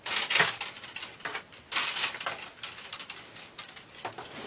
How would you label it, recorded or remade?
recorded